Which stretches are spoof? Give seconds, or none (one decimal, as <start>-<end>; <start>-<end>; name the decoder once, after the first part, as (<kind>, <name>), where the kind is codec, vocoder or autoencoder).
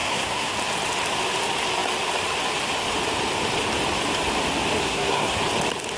0.0-0.5 (codec, SNAC); 4.8-5.4